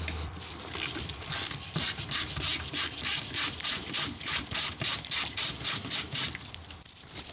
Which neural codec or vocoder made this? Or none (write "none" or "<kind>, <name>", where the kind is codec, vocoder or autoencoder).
vocoder, BigVGAN v2